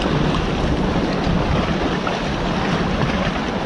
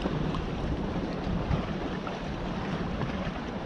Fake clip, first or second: second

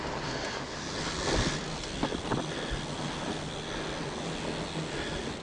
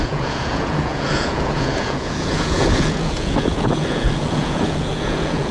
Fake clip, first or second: second